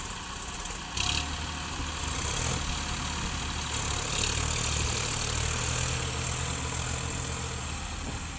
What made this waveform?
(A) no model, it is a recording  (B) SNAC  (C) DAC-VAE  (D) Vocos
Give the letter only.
A